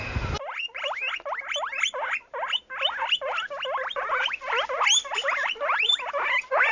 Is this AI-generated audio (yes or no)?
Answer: no